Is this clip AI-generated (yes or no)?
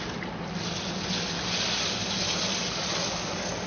no